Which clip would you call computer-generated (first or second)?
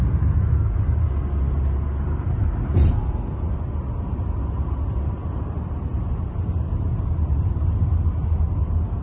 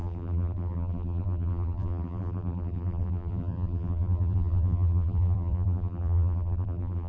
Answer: second